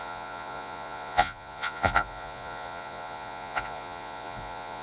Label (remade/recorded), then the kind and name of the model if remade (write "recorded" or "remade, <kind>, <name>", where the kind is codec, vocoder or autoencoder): remade, vocoder, Vocos